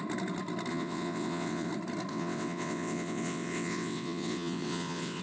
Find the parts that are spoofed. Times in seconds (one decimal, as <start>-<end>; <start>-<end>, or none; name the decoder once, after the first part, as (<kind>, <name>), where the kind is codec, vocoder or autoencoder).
0.7-1.7 (vocoder, WaveNeXt); 2.1-5.2